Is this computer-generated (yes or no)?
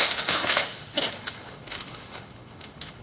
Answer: yes